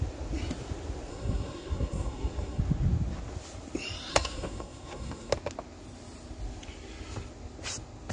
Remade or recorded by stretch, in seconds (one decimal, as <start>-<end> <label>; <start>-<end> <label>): 0.0-1.1 recorded; 1.1-2.6 remade; 2.6-4.1 recorded; 4.1-5.3 remade; 5.3-8.1 recorded